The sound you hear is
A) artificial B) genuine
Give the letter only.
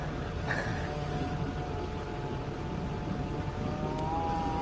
B